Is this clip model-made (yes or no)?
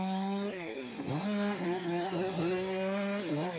yes